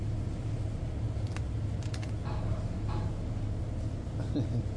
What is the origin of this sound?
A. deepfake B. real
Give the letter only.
B